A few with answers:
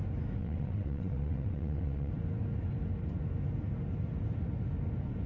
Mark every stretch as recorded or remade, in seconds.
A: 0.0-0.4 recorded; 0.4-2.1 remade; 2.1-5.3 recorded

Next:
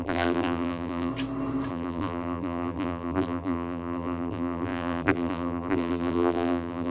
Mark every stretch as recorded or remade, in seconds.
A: 0.0-1.1 remade; 1.1-1.7 recorded; 1.7-6.9 remade

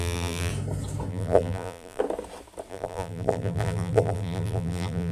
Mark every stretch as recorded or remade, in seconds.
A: 0.0-0.5 remade; 0.5-1.1 recorded; 1.1-2.0 remade; 2.0-2.7 recorded; 2.7-5.1 remade

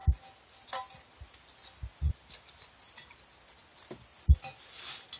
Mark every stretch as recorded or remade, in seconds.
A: 0.0-5.2 recorded